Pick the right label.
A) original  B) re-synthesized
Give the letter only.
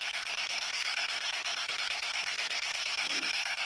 B